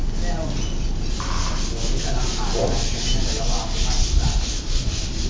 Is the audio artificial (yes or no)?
no